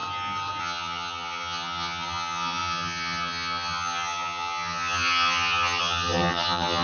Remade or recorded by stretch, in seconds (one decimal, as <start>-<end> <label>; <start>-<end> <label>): 0.0-0.6 recorded; 0.6-6.8 remade